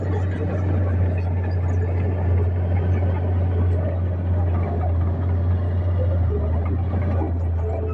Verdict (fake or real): real